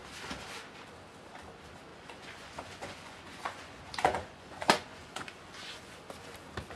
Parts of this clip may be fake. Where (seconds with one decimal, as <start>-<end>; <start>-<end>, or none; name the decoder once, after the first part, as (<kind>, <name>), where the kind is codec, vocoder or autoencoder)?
1.9-6.0 (vocoder, Vocos)